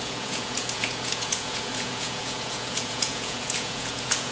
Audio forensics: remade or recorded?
remade